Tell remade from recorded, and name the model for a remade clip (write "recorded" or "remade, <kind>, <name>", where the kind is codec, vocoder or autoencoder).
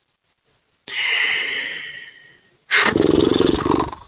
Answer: recorded